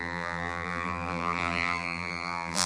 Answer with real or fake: fake